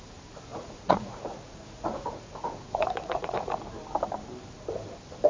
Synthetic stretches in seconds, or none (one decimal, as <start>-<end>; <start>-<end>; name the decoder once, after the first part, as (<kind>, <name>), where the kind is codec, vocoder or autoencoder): 0.5-3.7 (vocoder, Vocos)